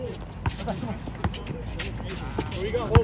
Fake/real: real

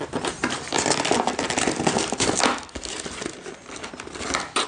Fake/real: real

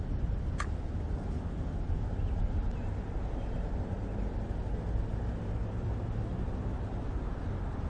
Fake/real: real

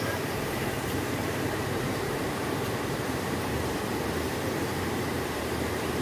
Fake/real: fake